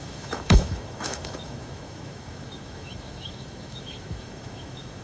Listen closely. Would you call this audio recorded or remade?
remade